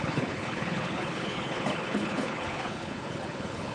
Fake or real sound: fake